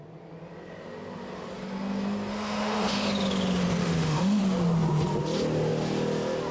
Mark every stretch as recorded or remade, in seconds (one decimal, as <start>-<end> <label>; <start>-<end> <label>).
0.0-2.3 recorded; 2.3-3.1 remade; 3.1-3.8 recorded; 3.8-4.4 remade; 4.4-6.5 recorded